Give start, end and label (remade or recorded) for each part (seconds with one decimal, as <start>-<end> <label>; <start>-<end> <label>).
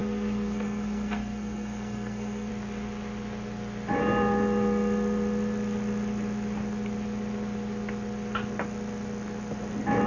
0.0-2.5 remade; 2.5-10.1 recorded